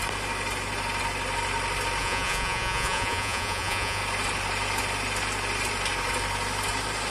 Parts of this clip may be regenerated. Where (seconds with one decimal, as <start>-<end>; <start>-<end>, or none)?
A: 2.0-4.0